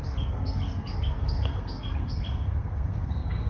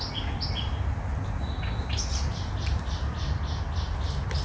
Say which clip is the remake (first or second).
first